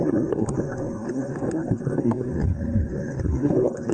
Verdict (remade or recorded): remade